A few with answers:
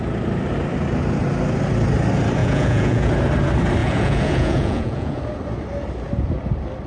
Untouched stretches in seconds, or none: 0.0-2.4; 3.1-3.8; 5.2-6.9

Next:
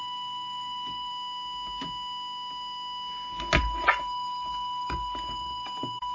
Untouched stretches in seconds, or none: 1.1-3.6

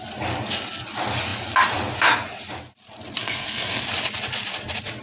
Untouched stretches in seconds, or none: 0.0-3.2; 3.8-5.0